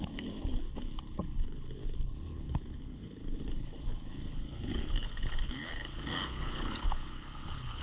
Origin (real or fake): fake